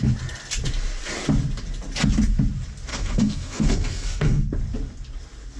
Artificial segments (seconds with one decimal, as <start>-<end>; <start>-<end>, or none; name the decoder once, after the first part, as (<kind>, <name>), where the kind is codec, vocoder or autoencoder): 2.9-4.4 (codec, SNAC)